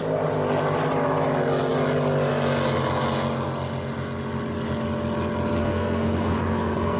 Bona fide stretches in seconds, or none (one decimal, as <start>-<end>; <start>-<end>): 0.0-5.6